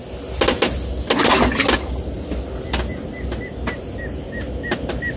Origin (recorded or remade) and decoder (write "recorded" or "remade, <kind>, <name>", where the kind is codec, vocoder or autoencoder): recorded